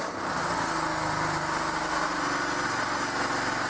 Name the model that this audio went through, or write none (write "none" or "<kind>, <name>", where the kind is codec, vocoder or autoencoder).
none